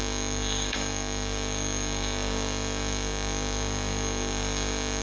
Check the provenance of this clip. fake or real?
fake